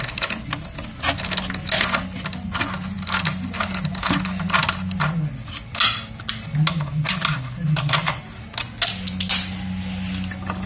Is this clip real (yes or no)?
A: yes